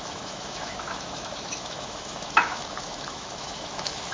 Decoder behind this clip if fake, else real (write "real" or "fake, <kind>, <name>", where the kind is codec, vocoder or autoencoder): fake, autoencoder, DAC-VAE